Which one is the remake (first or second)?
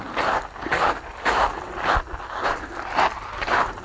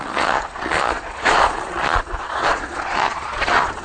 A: second